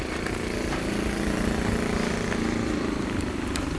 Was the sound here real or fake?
fake